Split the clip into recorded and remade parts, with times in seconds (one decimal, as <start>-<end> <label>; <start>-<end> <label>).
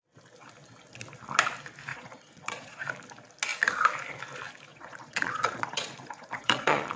0.0-1.9 recorded; 1.9-2.8 remade; 2.8-4.7 recorded; 4.7-7.0 remade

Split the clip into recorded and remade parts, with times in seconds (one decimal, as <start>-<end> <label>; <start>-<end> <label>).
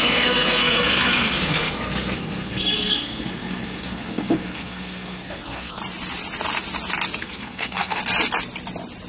0.0-5.8 remade; 5.8-7.2 recorded; 7.2-8.0 remade; 8.0-9.1 recorded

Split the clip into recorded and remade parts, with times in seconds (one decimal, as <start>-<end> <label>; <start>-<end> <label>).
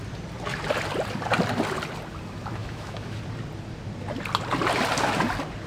0.0-2.6 recorded; 2.6-3.2 remade; 3.2-5.7 recorded